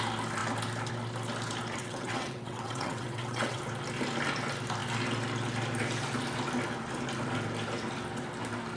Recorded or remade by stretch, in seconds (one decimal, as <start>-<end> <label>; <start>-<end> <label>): 0.0-1.8 recorded; 1.8-3.6 remade; 3.6-8.8 recorded